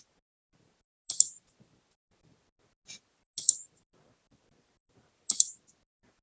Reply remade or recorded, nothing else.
recorded